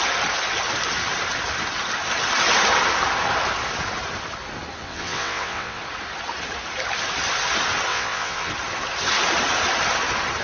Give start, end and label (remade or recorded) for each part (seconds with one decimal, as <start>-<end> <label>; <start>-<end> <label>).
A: 0.0-4.8 recorded; 4.8-5.8 remade; 5.8-7.9 recorded; 7.9-8.5 remade; 8.5-10.4 recorded